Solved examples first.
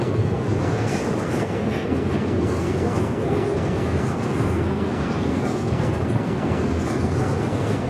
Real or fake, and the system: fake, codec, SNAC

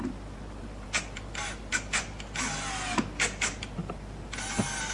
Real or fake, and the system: real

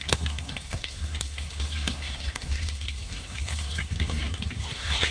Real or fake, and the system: fake, codec, SNAC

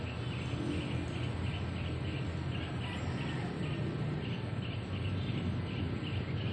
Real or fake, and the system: real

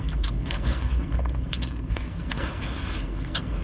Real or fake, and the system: fake, codec, SNAC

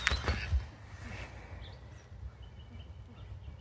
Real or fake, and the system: real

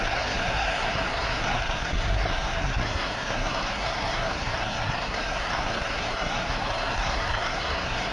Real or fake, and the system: fake, codec, SNAC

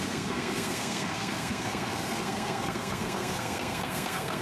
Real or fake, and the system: fake, codec, SNAC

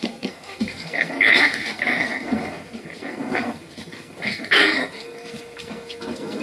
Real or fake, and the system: fake, codec, SNAC